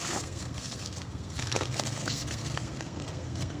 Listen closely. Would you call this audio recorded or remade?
remade